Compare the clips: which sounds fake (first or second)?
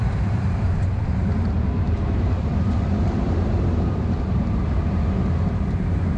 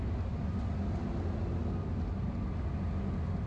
first